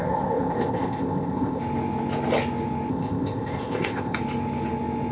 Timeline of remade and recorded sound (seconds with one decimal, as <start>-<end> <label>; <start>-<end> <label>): 0.0-1.6 remade; 1.6-2.9 recorded; 2.9-4.2 remade; 4.2-5.1 recorded